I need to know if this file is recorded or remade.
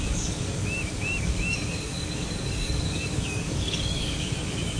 remade